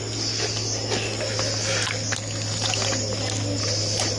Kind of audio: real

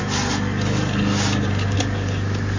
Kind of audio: real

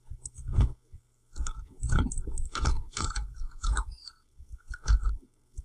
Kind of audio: fake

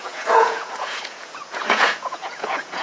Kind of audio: fake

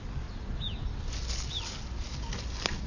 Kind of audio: real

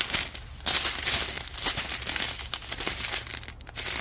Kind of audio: real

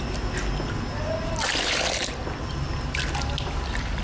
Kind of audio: real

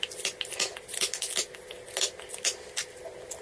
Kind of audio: real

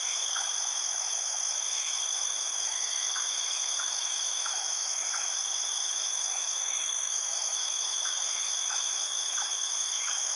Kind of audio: fake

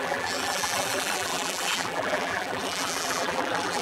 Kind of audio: fake